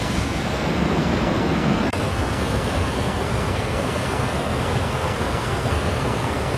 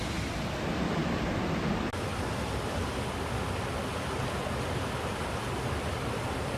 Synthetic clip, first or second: first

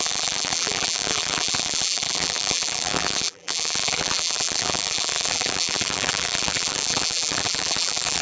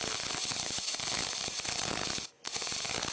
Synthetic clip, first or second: first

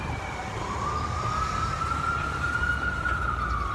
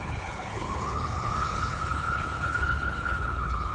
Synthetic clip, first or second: second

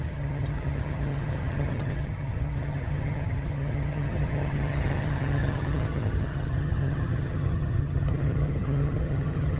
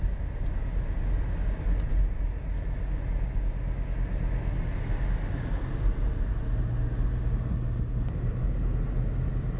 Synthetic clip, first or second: first